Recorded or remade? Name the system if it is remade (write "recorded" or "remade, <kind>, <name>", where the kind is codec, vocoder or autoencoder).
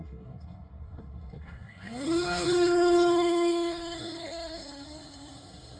remade, codec, SNAC